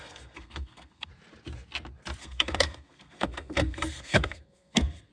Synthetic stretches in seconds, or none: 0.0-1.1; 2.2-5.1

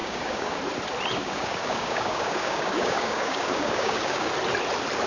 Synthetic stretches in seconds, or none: 0.0-0.6; 1.2-4.3

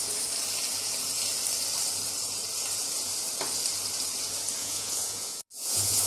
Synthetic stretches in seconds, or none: 4.6-6.1

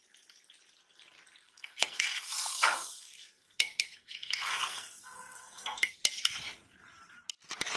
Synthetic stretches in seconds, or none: 1.4-6.0

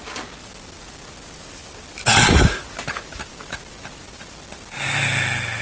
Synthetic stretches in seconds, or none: none

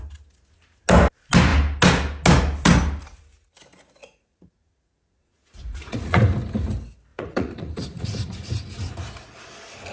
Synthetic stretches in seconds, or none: 4.0-6.2; 7.1-8.5